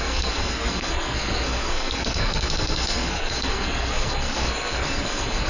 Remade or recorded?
remade